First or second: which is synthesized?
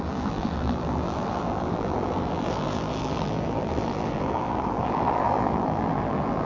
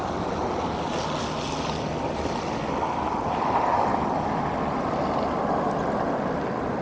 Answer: first